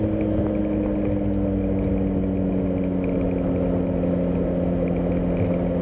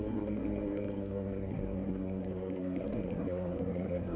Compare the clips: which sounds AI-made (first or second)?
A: second